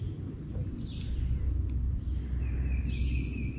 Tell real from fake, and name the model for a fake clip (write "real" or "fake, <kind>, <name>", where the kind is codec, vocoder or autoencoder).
real